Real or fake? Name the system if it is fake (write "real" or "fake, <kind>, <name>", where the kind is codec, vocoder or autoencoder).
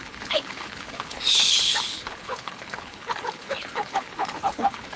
fake, codec, HILCodec